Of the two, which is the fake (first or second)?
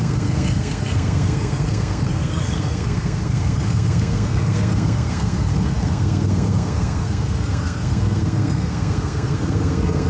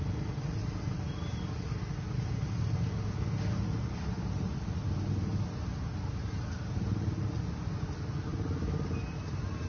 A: first